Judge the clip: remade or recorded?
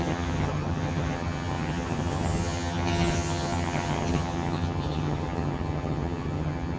remade